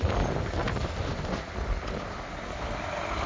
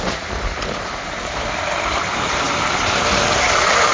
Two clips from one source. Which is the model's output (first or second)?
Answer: second